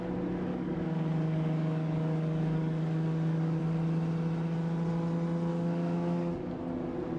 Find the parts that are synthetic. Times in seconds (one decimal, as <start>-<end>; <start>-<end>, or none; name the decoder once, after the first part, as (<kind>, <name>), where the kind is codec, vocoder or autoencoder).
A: 0.5-3.6 (codec, DAC); 5.5-6.5